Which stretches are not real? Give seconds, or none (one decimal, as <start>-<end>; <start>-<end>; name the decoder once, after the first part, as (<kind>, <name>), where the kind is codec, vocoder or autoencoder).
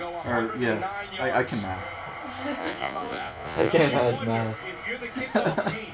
2.6-3.7 (vocoder, Vocos)